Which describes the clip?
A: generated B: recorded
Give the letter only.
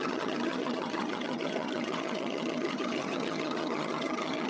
A